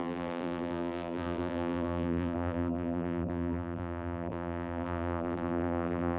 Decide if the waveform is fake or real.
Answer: fake